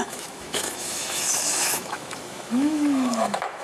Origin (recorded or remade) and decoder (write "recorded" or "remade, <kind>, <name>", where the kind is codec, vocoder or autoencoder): remade, autoencoder, DAC-VAE